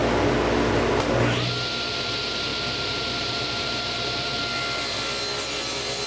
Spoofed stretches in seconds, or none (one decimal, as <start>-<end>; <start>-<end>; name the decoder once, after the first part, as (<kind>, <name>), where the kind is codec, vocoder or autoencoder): 2.5-4.4 (vocoder, BigVGAN v2)